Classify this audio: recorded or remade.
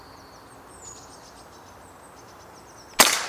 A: recorded